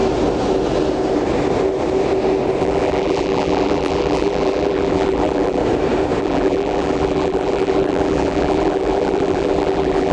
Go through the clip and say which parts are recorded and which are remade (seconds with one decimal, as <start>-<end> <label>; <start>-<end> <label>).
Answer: 0.0-2.6 recorded; 2.6-5.6 remade; 5.6-6.2 recorded; 6.2-10.1 remade